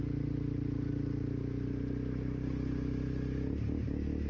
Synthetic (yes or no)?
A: no